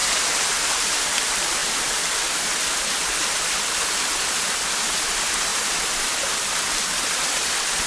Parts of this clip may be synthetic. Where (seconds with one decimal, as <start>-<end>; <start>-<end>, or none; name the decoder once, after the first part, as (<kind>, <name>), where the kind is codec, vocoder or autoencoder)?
none